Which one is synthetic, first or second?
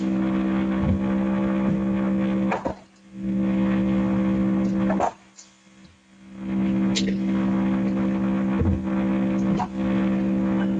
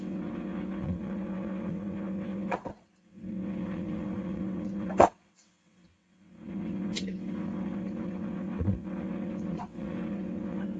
second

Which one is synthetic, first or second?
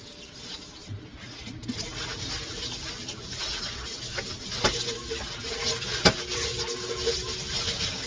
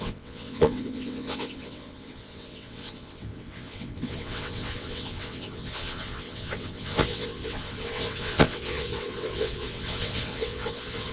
second